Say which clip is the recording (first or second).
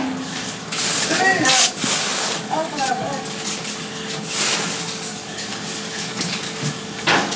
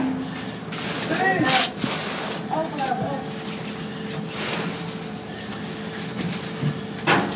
second